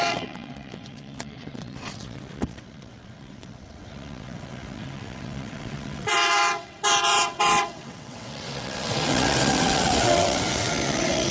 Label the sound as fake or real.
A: fake